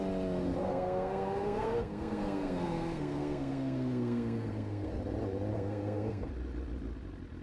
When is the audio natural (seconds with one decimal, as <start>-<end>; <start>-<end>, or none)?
0.0-0.6; 5.0-5.5; 6.3-7.4